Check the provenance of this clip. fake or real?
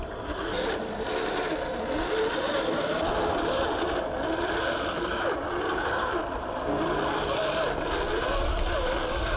fake